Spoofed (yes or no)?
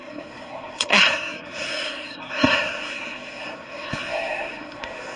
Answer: yes